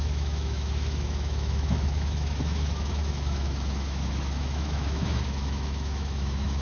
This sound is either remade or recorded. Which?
remade